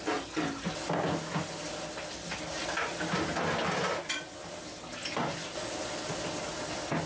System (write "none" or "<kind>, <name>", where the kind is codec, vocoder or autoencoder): none